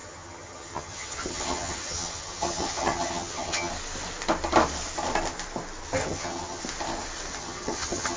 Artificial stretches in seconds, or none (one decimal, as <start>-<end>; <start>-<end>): 0.0-3.7; 6.0-6.6; 7.4-8.2